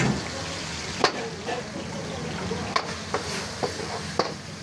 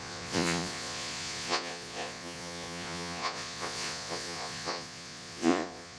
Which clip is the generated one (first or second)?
second